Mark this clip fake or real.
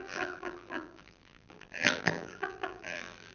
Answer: fake